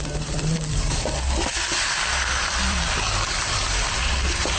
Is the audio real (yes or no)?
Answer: no